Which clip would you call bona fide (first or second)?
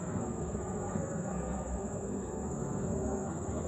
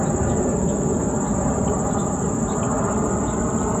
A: second